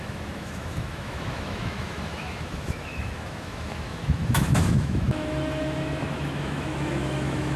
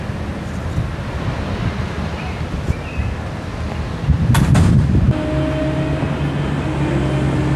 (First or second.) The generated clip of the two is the first